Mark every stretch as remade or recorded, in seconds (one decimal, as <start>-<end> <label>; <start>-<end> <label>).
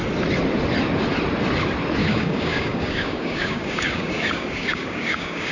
0.0-2.0 recorded; 2.0-5.5 remade